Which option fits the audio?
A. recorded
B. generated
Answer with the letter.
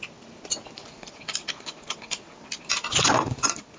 A